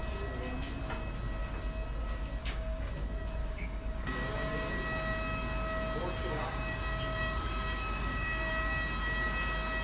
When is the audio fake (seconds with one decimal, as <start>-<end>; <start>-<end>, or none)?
2.4-2.9; 3.4-4.7; 6.2-8.5